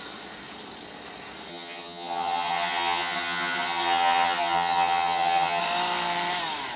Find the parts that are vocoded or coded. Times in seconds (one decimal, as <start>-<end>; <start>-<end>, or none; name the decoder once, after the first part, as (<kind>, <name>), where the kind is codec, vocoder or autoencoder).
1.5-5.6 (vocoder, HiFi-GAN)